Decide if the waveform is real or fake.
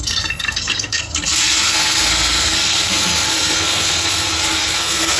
fake